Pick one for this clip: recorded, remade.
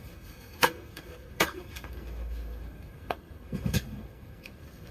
remade